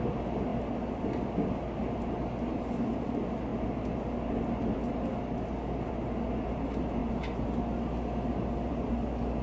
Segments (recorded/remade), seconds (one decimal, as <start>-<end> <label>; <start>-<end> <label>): 0.0-9.4 recorded